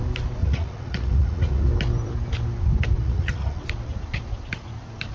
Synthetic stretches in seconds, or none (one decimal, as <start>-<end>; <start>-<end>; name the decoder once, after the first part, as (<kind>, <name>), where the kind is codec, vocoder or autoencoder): 0.4-1.7 (vocoder, Vocos); 3.0-3.6